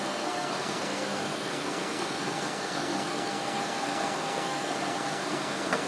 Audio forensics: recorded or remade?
remade